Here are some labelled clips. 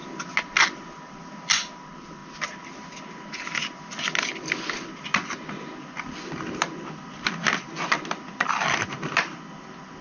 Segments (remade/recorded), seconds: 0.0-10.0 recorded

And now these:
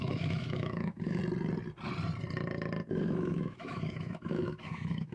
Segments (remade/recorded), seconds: 0.0-1.2 remade; 1.2-2.9 recorded; 2.9-5.1 remade

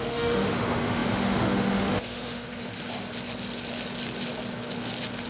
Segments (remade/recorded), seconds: 0.0-2.7 remade; 2.7-5.3 recorded

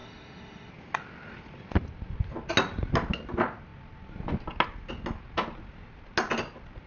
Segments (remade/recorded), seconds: 0.0-0.7 remade; 0.7-6.9 recorded

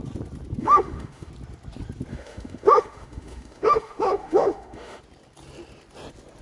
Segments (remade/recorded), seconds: 0.0-0.6 recorded; 0.6-1.3 remade; 1.3-2.1 recorded; 2.1-5.0 remade; 5.0-6.4 recorded

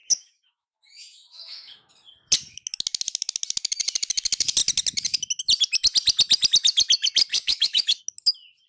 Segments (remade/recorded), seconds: 0.0-1.9 remade; 1.9-7.3 recorded; 7.3-8.0 remade; 8.0-8.7 recorded